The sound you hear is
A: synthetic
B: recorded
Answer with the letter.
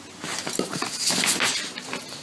B